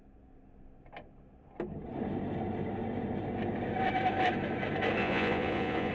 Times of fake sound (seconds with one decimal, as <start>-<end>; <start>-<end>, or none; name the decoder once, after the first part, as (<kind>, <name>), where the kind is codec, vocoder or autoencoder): 5.0-5.9 (vocoder, Vocos)